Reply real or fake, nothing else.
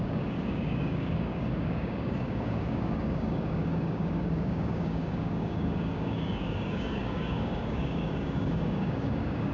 fake